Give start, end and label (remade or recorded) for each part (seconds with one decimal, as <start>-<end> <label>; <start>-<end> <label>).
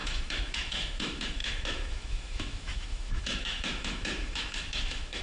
0.0-5.2 remade